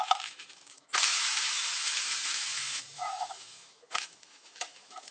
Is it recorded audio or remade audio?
remade